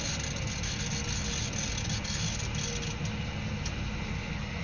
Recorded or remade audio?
recorded